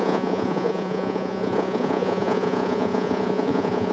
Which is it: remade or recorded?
remade